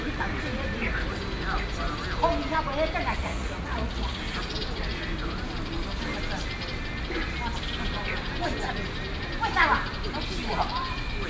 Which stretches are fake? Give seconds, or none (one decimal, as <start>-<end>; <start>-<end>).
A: 3.2-4.2